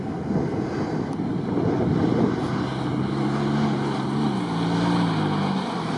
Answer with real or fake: real